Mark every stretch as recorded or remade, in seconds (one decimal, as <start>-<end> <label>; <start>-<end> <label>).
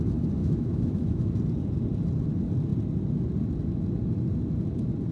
0.0-0.4 recorded; 0.4-1.3 remade; 1.3-5.1 recorded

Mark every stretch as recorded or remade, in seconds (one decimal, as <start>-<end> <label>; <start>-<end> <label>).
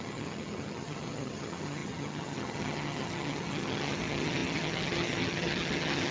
0.0-6.1 remade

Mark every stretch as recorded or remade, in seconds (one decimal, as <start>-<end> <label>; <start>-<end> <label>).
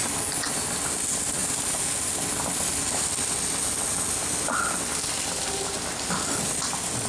0.0-7.1 recorded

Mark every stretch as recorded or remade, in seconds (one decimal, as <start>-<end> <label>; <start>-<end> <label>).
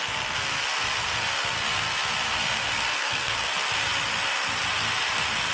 0.0-2.7 recorded; 2.7-3.3 remade; 3.3-5.5 recorded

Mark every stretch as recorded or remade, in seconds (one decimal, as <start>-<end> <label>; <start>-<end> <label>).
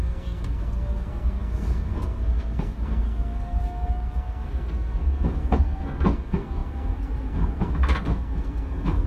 0.0-9.1 remade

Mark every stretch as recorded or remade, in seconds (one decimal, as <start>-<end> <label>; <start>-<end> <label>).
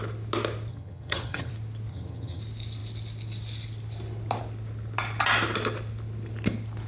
0.0-0.7 recorded; 0.7-1.5 remade; 1.5-1.9 recorded; 1.9-2.4 remade; 2.4-6.9 recorded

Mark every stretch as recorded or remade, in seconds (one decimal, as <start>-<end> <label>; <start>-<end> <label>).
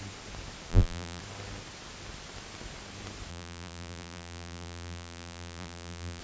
0.0-0.7 recorded; 0.7-1.2 remade; 1.2-3.3 recorded; 3.3-6.2 remade